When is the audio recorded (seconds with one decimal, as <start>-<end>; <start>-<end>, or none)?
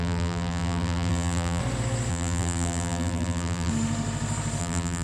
1.6-2.1; 3.7-4.6